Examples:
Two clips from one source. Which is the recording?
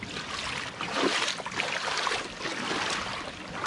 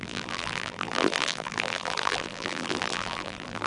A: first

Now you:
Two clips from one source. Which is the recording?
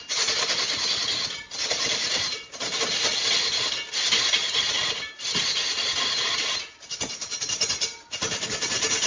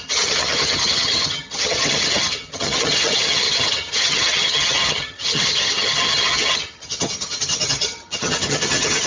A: first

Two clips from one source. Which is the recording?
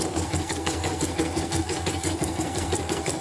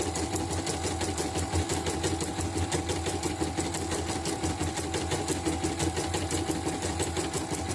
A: second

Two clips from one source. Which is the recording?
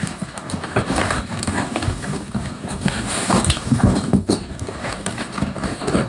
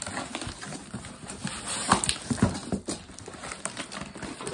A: second